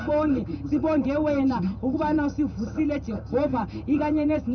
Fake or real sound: fake